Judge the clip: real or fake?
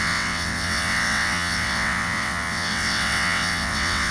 fake